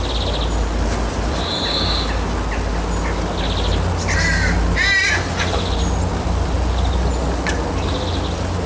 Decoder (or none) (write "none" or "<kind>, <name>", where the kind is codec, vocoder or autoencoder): none